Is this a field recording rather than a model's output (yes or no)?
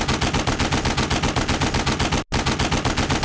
yes